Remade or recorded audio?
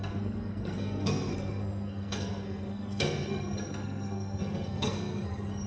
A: remade